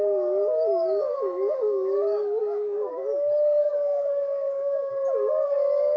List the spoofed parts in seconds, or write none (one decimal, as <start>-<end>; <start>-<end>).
0.7-2.9; 3.6-4.9